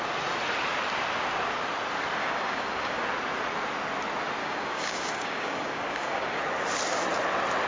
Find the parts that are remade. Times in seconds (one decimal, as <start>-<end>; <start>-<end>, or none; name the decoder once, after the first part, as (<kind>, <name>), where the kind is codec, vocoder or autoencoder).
2.2-3.0 (codec, DAC); 4.4-6.4